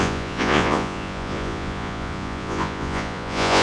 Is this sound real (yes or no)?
no